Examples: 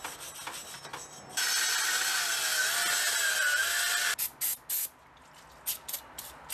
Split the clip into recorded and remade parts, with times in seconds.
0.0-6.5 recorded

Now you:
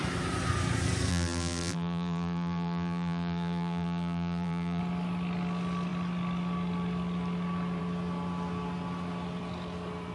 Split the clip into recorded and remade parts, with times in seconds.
0.0-1.1 recorded; 1.1-4.8 remade; 4.8-10.1 recorded